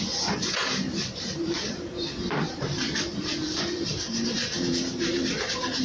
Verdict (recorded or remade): remade